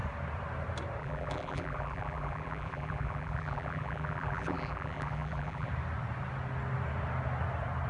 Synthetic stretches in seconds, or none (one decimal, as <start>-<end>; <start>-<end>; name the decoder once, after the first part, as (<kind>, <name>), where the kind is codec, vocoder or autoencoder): 1.0-5.7 (vocoder, BigVGAN v2)